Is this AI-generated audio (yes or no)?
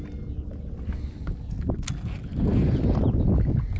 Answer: no